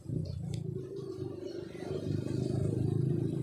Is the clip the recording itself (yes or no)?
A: yes